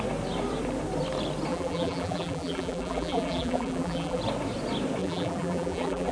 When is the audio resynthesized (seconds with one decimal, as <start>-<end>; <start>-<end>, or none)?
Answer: 1.5-4.2; 5.0-6.1